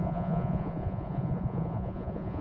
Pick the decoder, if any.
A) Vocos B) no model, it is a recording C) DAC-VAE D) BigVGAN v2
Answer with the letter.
A